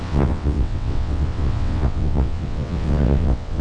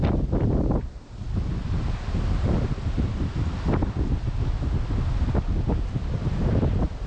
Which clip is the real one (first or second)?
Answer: second